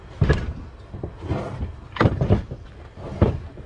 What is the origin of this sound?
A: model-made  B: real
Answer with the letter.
B